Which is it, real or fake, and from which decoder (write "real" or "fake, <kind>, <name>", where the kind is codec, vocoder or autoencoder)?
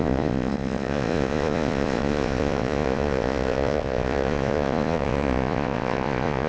fake, vocoder, Vocos